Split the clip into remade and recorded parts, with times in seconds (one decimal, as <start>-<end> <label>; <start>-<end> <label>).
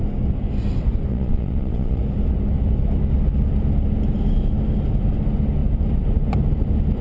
0.0-1.1 recorded; 1.1-2.0 remade; 2.0-7.0 recorded